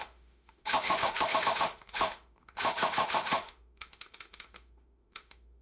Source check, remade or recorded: remade